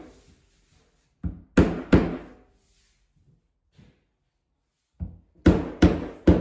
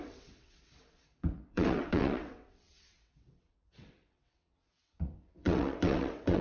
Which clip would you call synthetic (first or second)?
second